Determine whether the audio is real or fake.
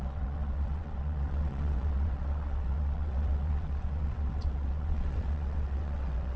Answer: fake